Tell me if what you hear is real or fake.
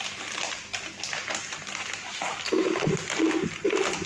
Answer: real